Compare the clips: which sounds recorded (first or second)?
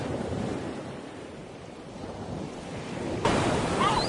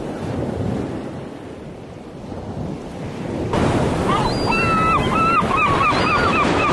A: second